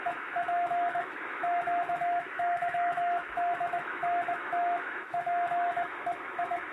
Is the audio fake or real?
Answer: fake